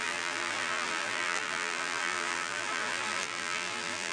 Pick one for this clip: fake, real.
fake